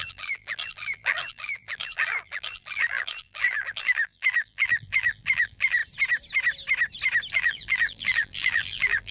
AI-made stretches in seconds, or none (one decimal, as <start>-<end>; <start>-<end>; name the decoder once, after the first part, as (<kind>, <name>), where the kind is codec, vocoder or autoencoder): 0.0-5.8 (vocoder, BigVGAN v2); 7.3-9.1